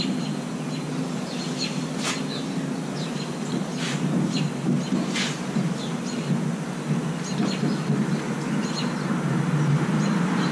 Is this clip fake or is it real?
real